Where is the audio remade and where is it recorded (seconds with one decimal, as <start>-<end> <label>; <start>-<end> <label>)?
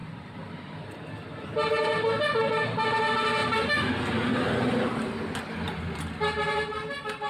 0.0-0.9 remade; 0.9-7.3 recorded